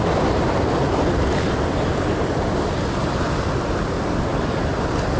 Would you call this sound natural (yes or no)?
yes